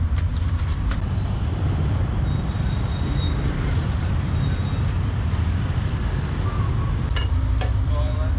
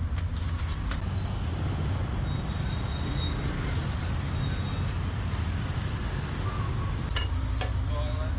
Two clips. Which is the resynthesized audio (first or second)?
first